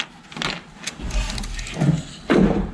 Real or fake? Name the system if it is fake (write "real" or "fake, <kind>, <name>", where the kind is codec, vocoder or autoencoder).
real